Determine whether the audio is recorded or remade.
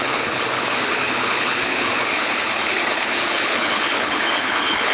remade